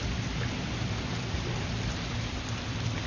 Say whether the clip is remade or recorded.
remade